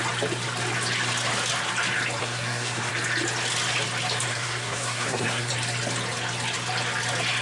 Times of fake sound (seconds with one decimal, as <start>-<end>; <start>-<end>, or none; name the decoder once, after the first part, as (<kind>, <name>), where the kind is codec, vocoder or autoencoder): 2.2-2.9 (codec, SNAC); 4.3-5.5